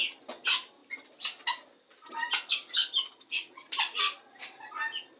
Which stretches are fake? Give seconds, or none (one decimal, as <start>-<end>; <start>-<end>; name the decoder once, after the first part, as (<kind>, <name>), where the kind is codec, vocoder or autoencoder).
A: none